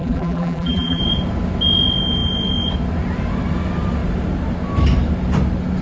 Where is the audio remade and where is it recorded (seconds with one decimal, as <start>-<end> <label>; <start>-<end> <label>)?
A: 0.0-1.0 remade; 1.0-5.8 recorded

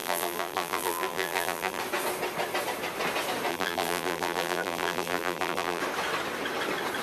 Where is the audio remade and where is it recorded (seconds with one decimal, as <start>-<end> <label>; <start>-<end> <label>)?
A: 0.0-1.8 remade; 1.8-3.5 recorded; 3.5-5.8 remade; 5.8-7.0 recorded

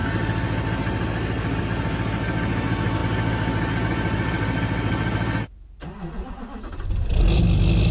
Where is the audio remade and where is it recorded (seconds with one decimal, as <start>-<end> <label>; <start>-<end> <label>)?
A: 0.0-7.9 recorded